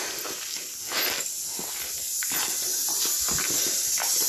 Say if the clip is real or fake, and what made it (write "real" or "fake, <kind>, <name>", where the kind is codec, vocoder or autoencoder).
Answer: real